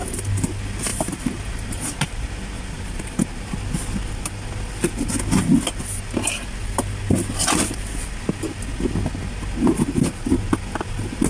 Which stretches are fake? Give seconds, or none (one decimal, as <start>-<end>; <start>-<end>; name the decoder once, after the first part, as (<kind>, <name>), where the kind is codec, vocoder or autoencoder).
0.9-3.5 (vocoder, BigVGAN v2)